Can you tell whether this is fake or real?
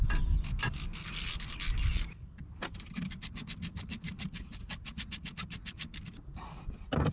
real